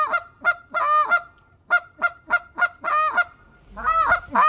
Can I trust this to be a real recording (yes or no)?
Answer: yes